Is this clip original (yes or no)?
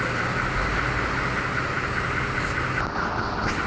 yes